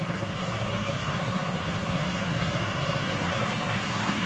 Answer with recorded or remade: remade